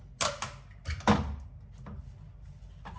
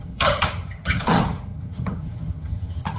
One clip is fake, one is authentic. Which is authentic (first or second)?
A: first